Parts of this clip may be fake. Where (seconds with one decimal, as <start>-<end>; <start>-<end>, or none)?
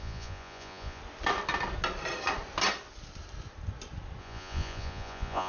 0.0-1.0; 4.2-5.5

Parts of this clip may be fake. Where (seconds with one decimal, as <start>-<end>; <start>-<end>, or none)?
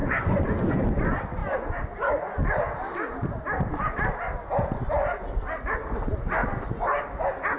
0.0-0.8